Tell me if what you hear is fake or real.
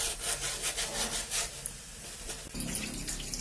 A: real